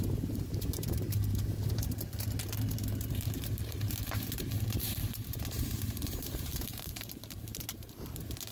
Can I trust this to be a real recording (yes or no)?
no